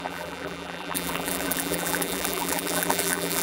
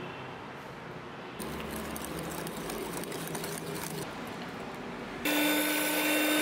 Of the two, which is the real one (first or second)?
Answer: second